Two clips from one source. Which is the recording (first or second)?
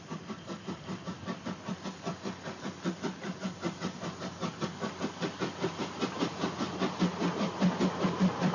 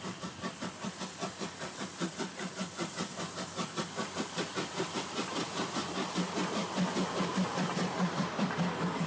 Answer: first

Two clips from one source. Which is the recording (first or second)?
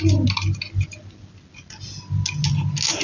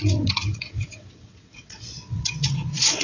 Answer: first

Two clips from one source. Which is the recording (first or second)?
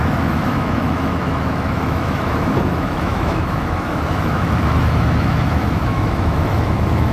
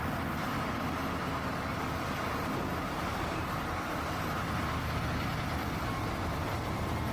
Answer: second